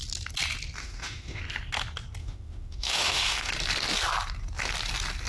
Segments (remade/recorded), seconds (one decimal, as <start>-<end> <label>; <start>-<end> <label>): 0.0-0.8 recorded; 0.8-1.4 remade; 1.4-2.2 recorded; 2.2-3.5 remade; 3.5-5.3 recorded